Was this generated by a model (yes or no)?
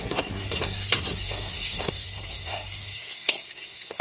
yes